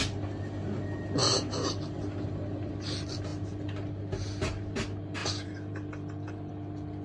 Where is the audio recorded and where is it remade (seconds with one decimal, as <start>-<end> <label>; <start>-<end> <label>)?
0.0-5.2 recorded; 5.2-6.5 remade; 6.5-7.0 recorded